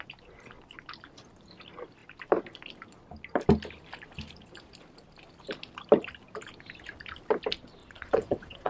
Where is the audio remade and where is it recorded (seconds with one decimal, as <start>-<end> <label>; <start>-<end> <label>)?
0.0-7.8 recorded; 7.8-8.7 remade